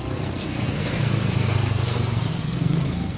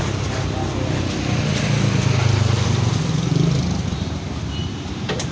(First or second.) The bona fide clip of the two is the second